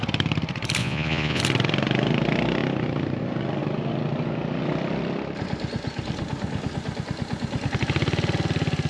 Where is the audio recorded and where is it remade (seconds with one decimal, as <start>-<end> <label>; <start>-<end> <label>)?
0.0-0.8 recorded; 0.8-1.4 remade; 1.4-8.9 recorded